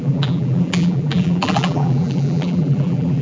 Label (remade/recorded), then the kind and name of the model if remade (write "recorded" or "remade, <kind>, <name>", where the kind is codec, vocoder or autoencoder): remade, vocoder, BigVGAN v2